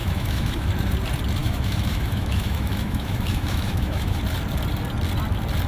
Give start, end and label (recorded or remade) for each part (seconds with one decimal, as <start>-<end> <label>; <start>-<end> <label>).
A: 0.0-0.7 remade; 0.7-1.4 recorded; 1.4-4.2 remade; 4.2-5.7 recorded